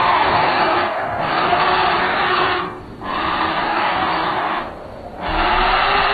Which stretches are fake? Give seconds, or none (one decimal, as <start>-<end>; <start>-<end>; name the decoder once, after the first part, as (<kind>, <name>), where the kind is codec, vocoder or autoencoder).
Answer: 0.0-1.6 (codec, DAC); 2.0-2.8; 3.5-4.6